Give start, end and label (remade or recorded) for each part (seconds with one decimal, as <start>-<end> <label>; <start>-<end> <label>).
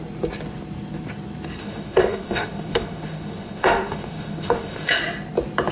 0.0-1.6 recorded; 1.6-5.0 remade; 5.0-5.7 recorded